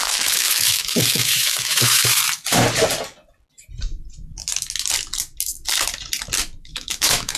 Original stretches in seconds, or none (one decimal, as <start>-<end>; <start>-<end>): 2.2-6.6

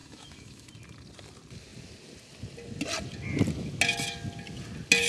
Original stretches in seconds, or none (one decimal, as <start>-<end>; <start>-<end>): 0.7-5.1